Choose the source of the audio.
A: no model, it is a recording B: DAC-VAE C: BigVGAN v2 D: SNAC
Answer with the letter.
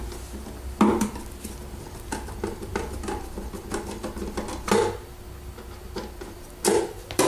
A